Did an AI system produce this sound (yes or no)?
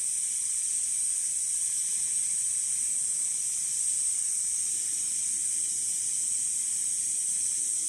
no